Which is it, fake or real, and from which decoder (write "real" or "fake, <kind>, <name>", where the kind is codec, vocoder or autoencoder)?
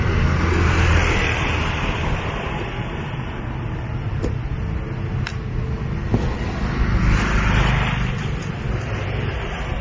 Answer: real